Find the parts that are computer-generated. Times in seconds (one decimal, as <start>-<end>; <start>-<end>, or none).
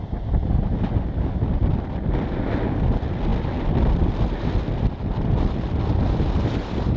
none